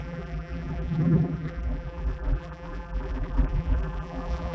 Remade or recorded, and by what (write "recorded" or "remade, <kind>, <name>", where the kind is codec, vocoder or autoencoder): remade, vocoder, BigVGAN v2